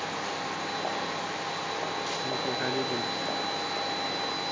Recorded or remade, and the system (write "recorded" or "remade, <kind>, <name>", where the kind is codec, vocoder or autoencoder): recorded